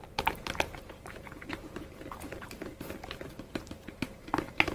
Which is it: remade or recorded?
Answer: remade